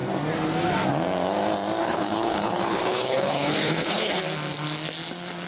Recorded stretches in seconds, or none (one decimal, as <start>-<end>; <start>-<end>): 0.0-1.8; 4.2-5.5